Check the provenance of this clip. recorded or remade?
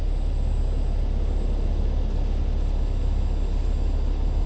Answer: recorded